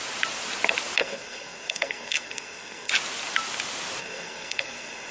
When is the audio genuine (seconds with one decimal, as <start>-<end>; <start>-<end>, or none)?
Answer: 0.0-1.0; 2.9-4.0